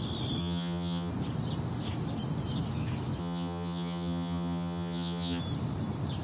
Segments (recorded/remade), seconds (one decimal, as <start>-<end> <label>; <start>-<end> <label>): 0.0-0.4 recorded; 0.4-1.1 remade; 1.1-3.2 recorded; 3.2-5.4 remade; 5.4-6.2 recorded

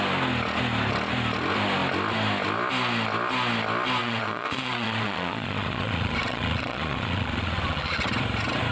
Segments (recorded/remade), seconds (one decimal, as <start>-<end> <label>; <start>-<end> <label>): 0.0-4.0 recorded; 4.0-8.0 remade; 8.0-8.7 recorded

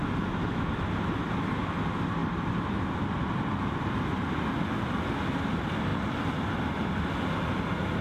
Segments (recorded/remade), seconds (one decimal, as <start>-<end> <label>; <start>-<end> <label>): 0.0-2.2 recorded; 2.2-2.8 remade; 2.8-8.0 recorded